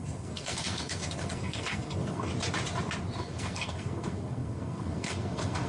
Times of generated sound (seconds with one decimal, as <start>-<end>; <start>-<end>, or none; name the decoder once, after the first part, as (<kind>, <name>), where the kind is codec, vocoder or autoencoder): 0.0-2.3 (codec, SNAC); 3.2-5.7